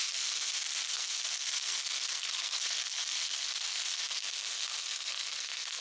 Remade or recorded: remade